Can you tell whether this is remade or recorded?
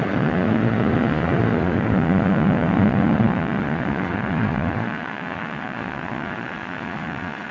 remade